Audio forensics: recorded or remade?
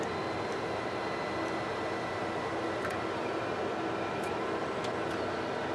recorded